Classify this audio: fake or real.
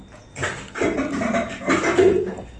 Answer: real